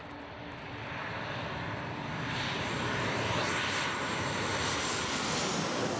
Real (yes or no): no